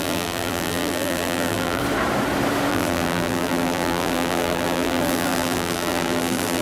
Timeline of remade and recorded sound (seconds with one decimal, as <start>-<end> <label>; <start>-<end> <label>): 0.0-1.8 remade; 1.8-2.7 recorded; 2.7-6.6 remade